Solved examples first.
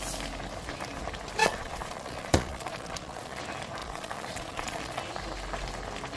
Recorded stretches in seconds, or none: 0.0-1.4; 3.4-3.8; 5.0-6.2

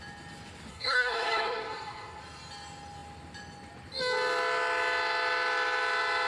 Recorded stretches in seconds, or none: 0.0-0.7; 2.2-6.3

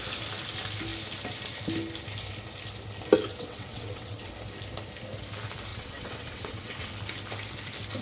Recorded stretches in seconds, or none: 0.0-3.3; 4.3-5.7; 6.9-8.0

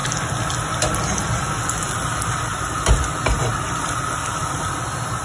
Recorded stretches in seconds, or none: 0.0-5.2

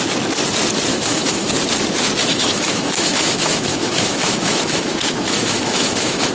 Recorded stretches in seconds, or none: 0.0-0.9; 1.5-2.2

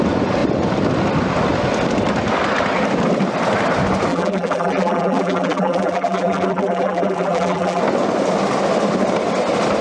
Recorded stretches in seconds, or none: 0.0-4.1; 7.8-9.8